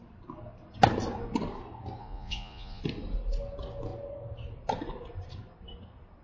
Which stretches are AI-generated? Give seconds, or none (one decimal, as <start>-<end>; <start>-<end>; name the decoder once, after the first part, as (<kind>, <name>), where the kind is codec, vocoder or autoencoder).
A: 2.0-2.8 (vocoder, Vocos)